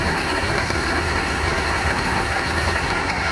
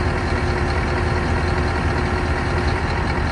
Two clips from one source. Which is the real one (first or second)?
second